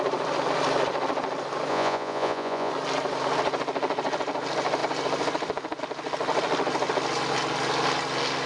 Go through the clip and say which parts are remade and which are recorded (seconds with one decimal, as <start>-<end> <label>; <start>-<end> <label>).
0.0-1.7 recorded; 1.7-2.7 remade; 2.7-8.5 recorded